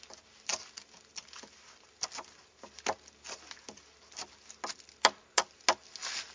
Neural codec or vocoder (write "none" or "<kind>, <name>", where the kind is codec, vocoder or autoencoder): none